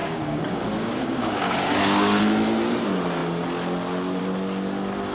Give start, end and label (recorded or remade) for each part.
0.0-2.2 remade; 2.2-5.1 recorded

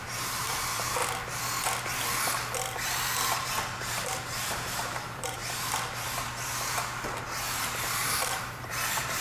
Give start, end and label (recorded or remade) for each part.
0.0-1.0 remade; 1.0-3.9 recorded; 3.9-5.4 remade; 5.4-7.2 recorded; 7.2-9.2 remade

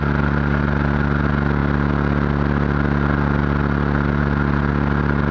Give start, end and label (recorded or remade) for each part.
0.0-5.3 recorded